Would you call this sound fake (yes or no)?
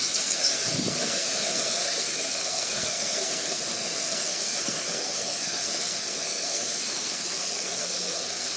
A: yes